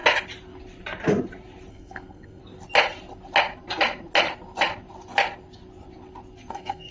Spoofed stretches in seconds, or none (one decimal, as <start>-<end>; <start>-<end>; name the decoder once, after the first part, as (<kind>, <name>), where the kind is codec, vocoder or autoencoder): 1.7-2.4 (codec, SNAC); 6.5-6.9

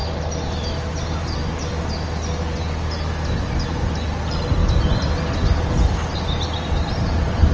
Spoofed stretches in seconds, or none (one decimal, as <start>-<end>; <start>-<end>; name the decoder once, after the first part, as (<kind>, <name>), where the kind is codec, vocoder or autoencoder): none

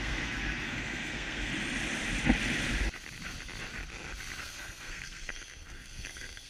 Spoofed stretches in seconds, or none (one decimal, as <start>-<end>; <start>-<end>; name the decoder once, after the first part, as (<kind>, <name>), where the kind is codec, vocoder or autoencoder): 0.0-1.5 (codec, SNAC); 4.4-6.5

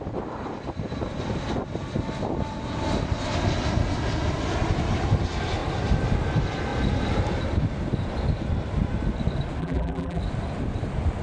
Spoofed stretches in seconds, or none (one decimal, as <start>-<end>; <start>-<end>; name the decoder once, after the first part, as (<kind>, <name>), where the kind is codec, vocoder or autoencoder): 9.6-10.2 (vocoder, BigVGAN v2)

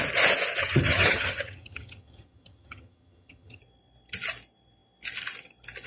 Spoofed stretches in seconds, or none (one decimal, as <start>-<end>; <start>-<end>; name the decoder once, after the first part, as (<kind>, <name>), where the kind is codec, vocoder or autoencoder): 0.6-3.6 (vocoder, HiFi-GAN)